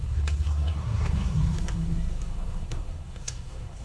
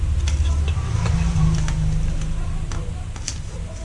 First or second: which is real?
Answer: second